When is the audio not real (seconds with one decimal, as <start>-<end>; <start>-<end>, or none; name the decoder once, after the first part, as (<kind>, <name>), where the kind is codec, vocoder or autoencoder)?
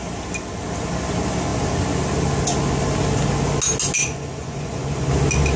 4.0-5.1 (vocoder, Vocos)